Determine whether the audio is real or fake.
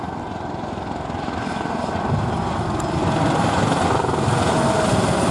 real